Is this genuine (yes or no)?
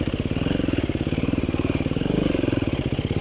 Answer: yes